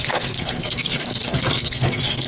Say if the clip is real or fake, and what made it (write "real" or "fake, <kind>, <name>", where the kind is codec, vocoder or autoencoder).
fake, codec, SNAC